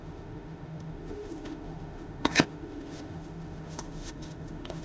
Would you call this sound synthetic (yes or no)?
yes